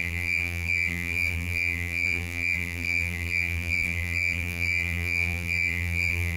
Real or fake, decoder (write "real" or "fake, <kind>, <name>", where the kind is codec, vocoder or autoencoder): fake, vocoder, BigVGAN v2